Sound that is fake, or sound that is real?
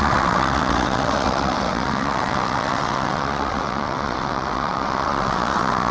fake